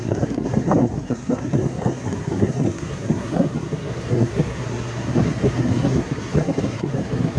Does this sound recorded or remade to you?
remade